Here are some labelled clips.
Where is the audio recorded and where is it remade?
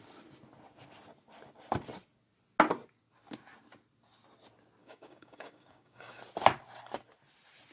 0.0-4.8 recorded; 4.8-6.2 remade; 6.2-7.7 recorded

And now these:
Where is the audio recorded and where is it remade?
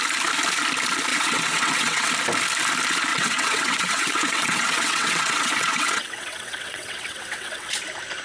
0.0-1.1 recorded; 1.1-2.1 remade; 2.1-3.1 recorded; 3.1-7.7 remade; 7.7-8.2 recorded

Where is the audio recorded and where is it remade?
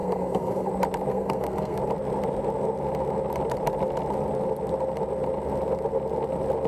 0.0-0.7 remade; 0.7-1.1 recorded; 1.1-1.8 remade; 1.8-6.7 recorded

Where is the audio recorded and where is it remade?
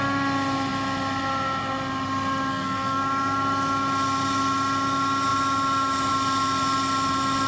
0.0-2.5 recorded; 2.5-3.0 remade; 3.0-7.5 recorded